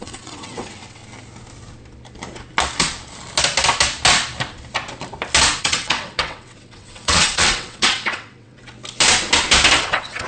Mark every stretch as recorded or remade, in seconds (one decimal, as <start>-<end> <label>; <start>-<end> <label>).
0.0-1.0 remade; 1.0-5.6 recorded; 5.6-8.6 remade; 8.6-9.8 recorded; 9.8-10.3 remade